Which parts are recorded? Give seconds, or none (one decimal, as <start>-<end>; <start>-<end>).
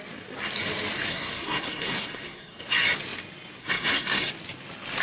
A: 0.0-1.1; 2.7-3.6; 4.3-5.0